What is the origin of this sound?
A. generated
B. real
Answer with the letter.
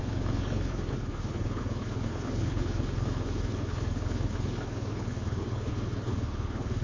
A